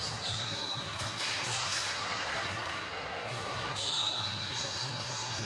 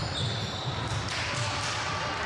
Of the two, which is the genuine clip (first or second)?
second